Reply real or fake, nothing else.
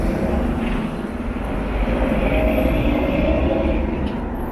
real